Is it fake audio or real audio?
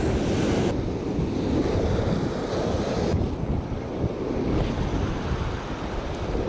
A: real